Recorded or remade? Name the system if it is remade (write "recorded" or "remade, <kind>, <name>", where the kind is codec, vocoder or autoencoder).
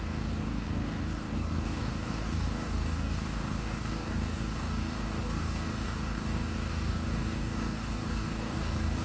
remade, codec, DAC